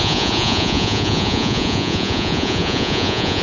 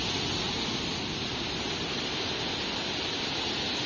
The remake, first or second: first